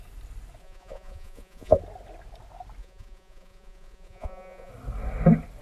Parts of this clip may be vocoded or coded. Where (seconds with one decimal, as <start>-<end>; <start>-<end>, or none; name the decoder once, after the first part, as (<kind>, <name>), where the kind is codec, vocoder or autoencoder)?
0.6-1.8 (vocoder, Vocos); 2.8-4.7